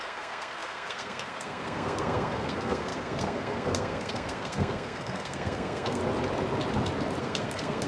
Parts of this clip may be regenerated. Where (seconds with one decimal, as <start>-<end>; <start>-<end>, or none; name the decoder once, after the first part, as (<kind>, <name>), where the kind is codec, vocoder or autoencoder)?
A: 0.0-6.0 (codec, SNAC); 7.2-7.9